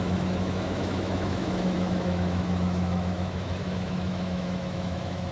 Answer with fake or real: fake